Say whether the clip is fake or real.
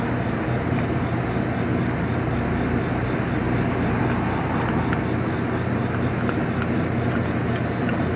real